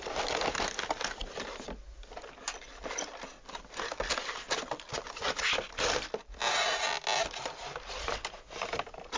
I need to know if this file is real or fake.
real